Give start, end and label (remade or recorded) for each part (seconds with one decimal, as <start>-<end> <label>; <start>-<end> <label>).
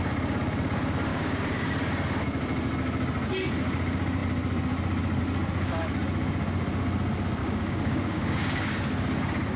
0.0-1.1 recorded; 1.1-1.7 remade; 1.7-7.4 recorded; 7.4-8.8 remade; 8.8-9.6 recorded